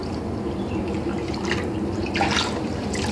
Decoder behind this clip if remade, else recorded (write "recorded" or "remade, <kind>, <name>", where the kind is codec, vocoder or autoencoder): remade, vocoder, BigVGAN v2